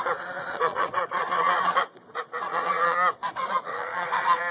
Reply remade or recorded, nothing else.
remade